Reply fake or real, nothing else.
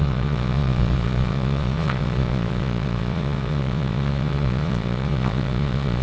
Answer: fake